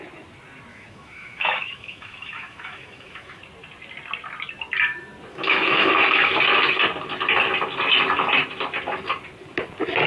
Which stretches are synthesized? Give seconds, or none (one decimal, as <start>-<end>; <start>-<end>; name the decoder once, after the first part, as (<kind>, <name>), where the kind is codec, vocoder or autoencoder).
0.7-3.4 (autoencoder, DAC-VAE); 5.3-6.4